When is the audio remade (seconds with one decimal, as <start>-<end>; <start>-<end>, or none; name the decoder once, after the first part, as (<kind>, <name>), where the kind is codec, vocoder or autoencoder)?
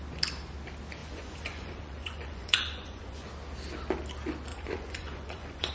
1.0-3.3 (vocoder, Vocos); 4.5-5.7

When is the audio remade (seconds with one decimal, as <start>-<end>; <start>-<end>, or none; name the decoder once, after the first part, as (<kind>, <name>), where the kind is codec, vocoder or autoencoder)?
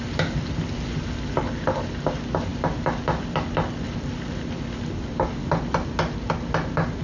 none